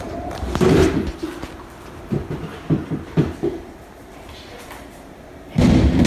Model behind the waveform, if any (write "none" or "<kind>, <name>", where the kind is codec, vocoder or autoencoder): vocoder, BigVGAN v2